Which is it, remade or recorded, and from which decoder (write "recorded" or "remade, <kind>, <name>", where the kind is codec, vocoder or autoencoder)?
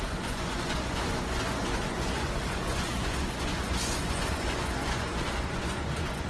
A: remade, vocoder, Vocos